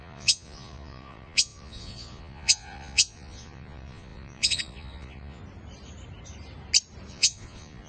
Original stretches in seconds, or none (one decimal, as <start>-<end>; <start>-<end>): 5.4-7.1